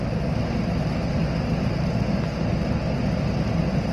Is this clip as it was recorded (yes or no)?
yes